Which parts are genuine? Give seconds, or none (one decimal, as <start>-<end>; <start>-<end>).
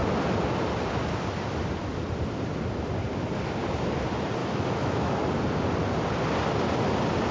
0.0-4.4; 5.1-7.3